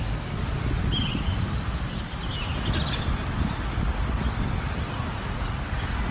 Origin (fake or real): real